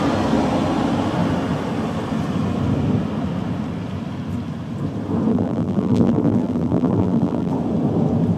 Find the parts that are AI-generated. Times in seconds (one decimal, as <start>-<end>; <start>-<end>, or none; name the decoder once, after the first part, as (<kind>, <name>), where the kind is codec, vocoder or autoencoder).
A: 5.3-7.5 (vocoder, BigVGAN v2)

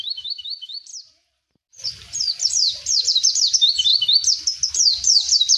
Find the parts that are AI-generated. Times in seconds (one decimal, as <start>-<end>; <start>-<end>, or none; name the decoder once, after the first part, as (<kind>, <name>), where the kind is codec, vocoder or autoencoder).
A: 0.0-0.9 (vocoder, BigVGAN v2); 2.5-3.9; 4.7-5.6

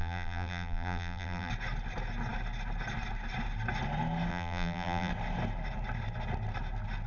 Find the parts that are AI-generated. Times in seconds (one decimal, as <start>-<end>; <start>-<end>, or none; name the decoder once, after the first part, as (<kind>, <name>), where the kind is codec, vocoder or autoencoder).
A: 0.0-1.5 (vocoder, BigVGAN v2); 4.3-5.1

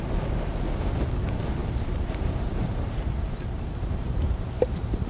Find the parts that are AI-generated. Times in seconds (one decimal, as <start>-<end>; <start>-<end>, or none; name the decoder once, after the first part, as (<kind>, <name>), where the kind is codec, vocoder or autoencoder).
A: 1.6-5.1 (vocoder, BigVGAN v2)